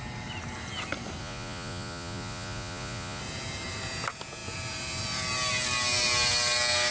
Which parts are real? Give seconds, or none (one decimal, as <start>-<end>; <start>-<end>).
0.0-1.2; 3.2-6.9